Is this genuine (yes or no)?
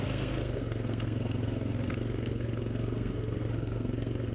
no